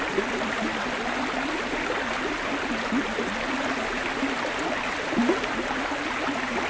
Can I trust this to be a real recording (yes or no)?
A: yes